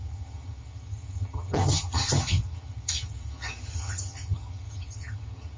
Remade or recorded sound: remade